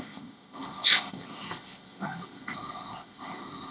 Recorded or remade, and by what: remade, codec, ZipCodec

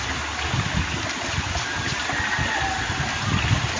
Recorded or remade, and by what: recorded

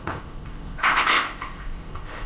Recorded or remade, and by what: remade, codec, ZipCodec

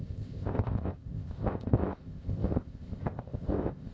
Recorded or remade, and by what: remade, codec, ZipCodec